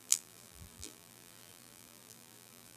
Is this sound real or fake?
fake